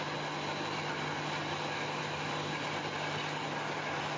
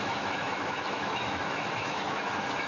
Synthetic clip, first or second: second